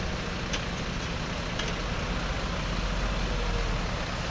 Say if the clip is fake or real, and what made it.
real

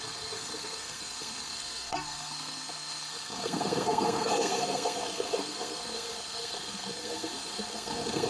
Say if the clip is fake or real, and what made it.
fake, codec, SNAC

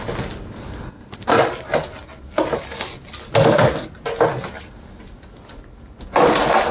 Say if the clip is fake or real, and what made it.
real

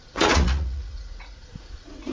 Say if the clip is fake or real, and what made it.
fake, vocoder, Vocos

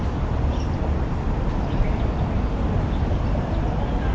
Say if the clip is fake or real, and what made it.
real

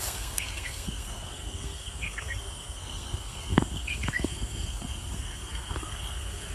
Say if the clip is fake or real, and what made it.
fake, codec, SNAC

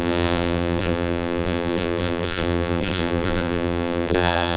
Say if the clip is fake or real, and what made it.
fake, vocoder, BigVGAN v2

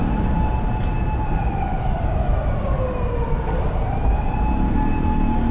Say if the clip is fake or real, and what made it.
real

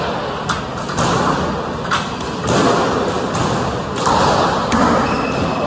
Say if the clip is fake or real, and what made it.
real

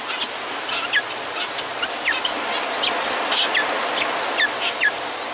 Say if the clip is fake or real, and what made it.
real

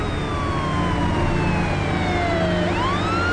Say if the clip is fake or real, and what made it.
real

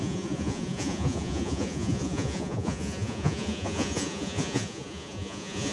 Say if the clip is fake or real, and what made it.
fake, vocoder, Vocos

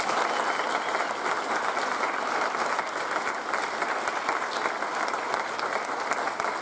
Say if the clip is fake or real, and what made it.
real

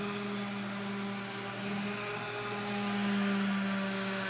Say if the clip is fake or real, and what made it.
real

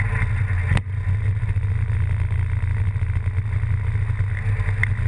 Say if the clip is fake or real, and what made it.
real